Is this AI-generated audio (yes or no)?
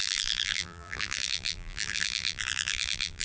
yes